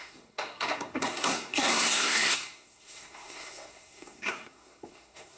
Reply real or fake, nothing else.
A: fake